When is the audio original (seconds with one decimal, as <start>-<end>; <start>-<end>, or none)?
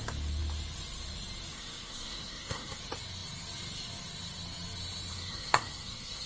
0.0-1.5; 2.8-5.1